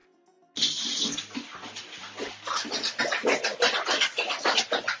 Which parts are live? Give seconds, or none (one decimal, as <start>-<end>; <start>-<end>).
0.0-5.0